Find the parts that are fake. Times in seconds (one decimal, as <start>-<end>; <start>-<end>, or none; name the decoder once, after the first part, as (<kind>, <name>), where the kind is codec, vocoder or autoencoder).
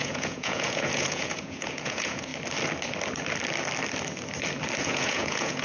0.0-2.3 (vocoder, Vocos); 4.8-5.6